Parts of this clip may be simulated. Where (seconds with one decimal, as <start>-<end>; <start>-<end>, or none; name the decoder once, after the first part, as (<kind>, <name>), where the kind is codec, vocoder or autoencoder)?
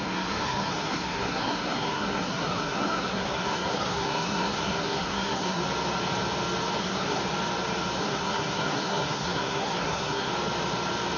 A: 0.0-5.6 (codec, SNAC); 6.8-7.2; 8.0-10.3